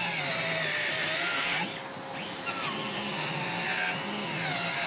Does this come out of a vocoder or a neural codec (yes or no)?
no